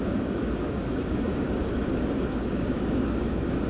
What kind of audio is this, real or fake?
fake